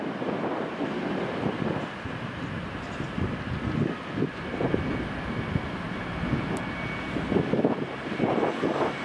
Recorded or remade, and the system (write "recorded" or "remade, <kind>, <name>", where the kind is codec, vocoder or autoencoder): recorded